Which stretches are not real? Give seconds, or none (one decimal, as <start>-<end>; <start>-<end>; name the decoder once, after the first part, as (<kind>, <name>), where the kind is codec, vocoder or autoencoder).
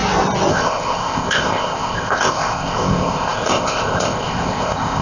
0.5-5.0 (codec, ZipCodec)